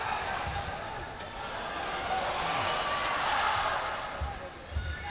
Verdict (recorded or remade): recorded